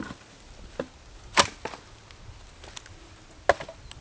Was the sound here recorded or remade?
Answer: recorded